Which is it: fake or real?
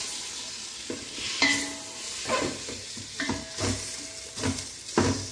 real